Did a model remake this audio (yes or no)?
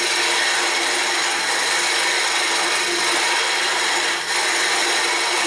no